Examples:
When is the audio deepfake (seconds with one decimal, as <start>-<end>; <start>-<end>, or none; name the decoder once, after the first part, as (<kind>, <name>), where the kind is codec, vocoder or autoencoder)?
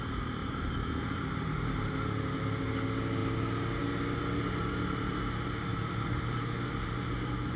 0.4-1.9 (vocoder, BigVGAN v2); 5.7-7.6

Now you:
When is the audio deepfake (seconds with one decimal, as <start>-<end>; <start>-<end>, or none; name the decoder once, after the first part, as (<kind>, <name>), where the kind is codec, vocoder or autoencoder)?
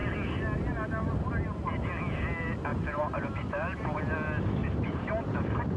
2.7-4.0 (vocoder, BigVGAN v2); 4.6-5.8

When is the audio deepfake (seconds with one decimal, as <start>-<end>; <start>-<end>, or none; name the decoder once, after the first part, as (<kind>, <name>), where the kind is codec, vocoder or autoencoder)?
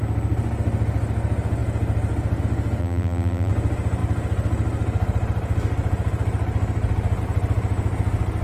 2.8-3.5 (vocoder, BigVGAN v2)